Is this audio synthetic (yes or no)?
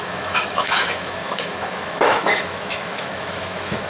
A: yes